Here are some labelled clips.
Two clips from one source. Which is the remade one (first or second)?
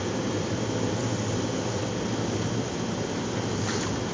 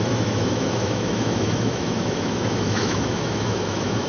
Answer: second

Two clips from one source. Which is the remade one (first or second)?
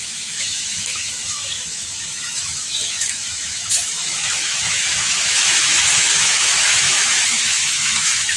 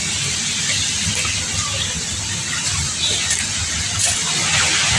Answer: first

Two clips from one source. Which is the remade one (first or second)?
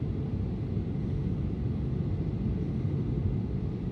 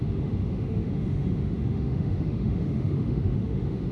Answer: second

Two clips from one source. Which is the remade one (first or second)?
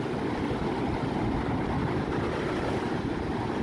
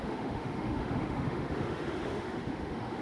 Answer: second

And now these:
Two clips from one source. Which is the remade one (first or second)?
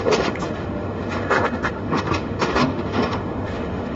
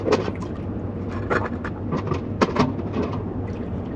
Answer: first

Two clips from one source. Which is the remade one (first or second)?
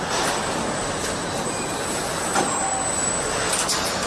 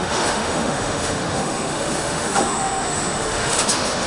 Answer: second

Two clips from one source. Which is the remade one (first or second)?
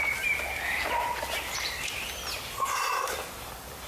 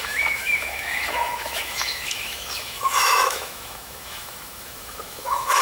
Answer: second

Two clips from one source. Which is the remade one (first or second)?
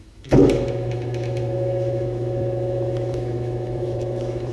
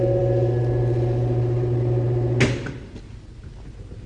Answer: first